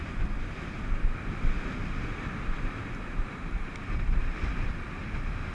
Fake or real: real